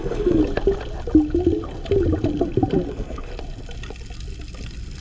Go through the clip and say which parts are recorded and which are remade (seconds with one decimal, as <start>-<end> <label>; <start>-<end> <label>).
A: 0.0-0.4 remade; 0.4-2.9 recorded; 2.9-3.3 remade; 3.3-5.0 recorded